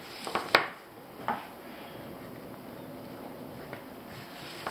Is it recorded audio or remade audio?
recorded